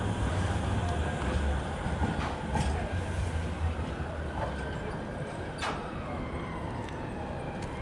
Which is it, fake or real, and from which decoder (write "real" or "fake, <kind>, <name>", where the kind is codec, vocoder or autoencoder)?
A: real